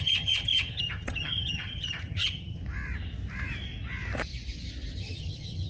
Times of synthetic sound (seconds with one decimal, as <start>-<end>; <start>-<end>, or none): 0.0-2.6; 5.0-5.7